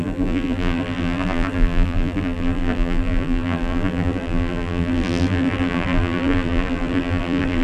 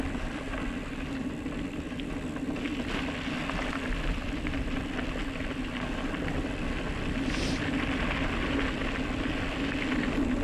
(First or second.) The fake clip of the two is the first